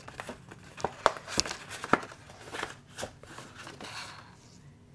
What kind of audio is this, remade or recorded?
recorded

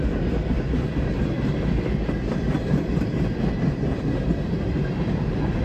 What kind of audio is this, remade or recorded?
recorded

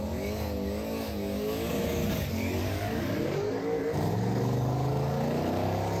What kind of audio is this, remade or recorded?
remade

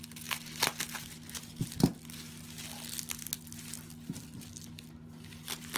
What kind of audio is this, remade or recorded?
recorded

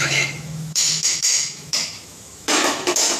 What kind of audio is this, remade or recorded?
remade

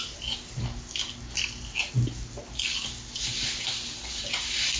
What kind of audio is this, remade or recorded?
recorded